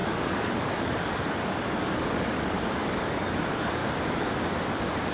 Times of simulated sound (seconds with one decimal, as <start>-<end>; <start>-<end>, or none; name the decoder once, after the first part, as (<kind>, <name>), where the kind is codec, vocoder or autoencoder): 0.0-3.8 (codec, DAC)